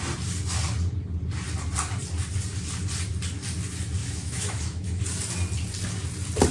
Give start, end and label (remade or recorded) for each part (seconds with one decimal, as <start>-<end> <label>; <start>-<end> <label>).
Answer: 0.0-4.0 recorded; 4.0-5.0 remade; 5.0-6.5 recorded